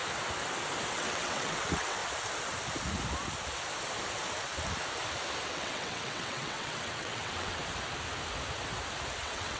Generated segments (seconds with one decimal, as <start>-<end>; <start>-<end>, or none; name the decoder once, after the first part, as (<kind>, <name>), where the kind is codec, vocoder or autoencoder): 0.9-2.0 (vocoder, WaveNeXt); 5.5-7.6; 9.2-9.6